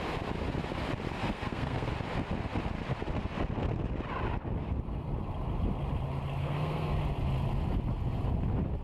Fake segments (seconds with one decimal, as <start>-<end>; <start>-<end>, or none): 1.2-1.9; 6.4-7.0